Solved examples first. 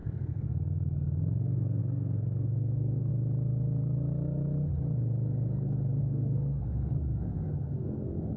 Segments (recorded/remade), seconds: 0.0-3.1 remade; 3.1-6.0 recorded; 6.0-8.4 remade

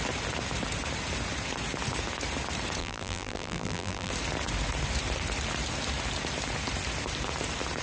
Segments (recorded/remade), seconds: 0.0-2.8 recorded; 2.8-4.1 remade; 4.1-7.8 recorded

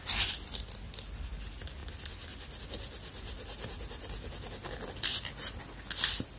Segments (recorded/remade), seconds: 0.0-6.4 recorded